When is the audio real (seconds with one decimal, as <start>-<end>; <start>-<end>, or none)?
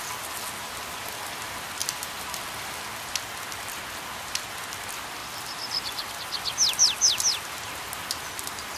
0.0-5.2; 6.1-8.8